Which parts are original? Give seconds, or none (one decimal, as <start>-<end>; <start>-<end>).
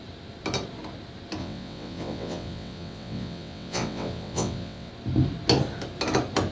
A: 0.0-1.4; 4.9-6.5